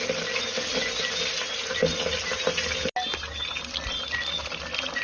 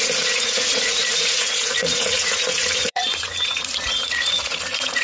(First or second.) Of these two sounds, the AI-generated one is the second